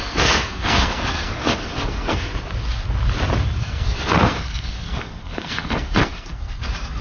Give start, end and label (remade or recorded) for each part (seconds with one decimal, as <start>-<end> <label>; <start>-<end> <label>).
0.0-2.3 remade; 2.3-3.6 recorded; 3.6-7.0 remade